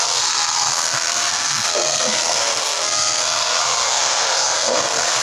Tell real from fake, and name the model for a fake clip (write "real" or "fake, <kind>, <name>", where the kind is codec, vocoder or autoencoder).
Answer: fake, codec, SNAC